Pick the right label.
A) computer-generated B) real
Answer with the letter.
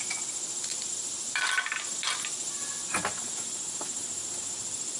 B